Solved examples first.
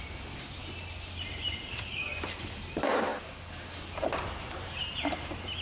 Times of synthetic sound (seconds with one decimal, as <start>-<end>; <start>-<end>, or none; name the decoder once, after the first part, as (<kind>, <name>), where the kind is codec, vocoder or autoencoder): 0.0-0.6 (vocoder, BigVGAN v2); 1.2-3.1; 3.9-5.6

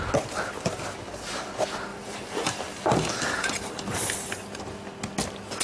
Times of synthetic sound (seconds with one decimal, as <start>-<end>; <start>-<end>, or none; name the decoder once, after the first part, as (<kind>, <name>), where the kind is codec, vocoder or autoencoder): 1.9-4.6 (vocoder, BigVGAN v2)

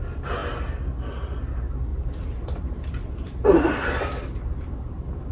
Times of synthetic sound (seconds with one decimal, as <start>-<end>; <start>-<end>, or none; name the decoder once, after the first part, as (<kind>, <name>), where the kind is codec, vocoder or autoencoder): 1.9-5.3 (vocoder, BigVGAN v2)

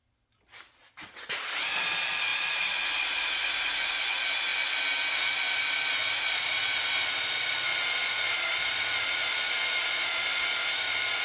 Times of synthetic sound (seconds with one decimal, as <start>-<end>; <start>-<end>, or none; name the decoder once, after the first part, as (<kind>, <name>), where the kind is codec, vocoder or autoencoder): 2.3-4.1 (vocoder, BigVGAN v2)

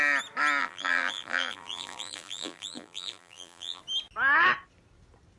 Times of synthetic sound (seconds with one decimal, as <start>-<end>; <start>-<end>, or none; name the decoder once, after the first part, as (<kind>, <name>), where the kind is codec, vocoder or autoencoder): 0.6-3.8 (vocoder, BigVGAN v2)

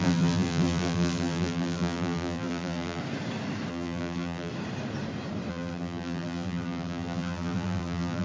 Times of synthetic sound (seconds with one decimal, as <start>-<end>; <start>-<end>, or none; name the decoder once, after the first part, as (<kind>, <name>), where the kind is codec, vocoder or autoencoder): 0.0-3.0 (vocoder, BigVGAN v2); 3.7-4.5; 5.5-8.2

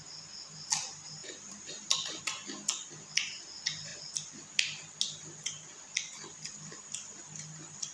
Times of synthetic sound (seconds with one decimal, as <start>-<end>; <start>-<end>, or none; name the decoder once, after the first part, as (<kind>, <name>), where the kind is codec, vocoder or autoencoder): 1.2-2.2 (vocoder, BigVGAN v2)

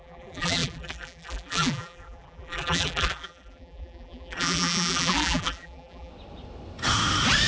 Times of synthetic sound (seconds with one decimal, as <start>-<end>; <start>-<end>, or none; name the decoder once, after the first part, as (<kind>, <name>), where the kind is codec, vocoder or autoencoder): 0.0-6.1 (vocoder, BigVGAN v2)